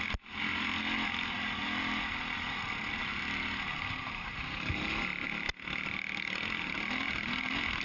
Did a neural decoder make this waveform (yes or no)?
no